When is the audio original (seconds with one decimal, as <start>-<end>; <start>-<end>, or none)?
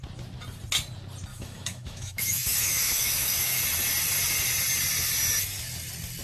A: 0.0-1.3; 3.6-6.2